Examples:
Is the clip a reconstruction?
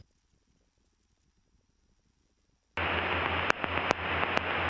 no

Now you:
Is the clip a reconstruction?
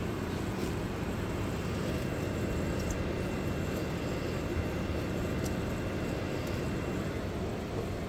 no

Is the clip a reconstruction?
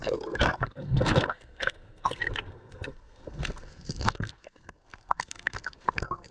yes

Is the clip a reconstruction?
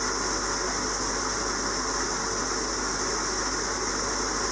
no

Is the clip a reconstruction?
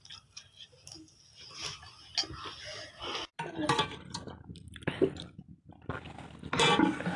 no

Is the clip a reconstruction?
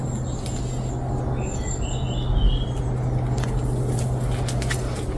no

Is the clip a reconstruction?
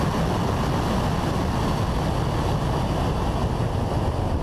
no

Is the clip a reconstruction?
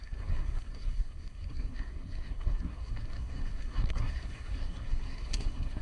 yes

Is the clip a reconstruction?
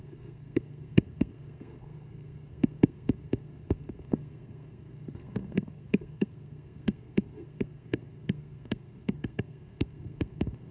yes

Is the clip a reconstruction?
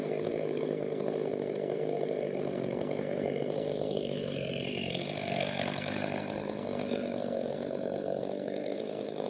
yes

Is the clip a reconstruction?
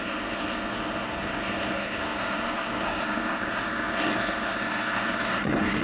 yes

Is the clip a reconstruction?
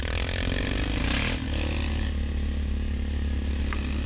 no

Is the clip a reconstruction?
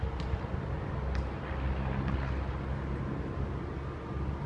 no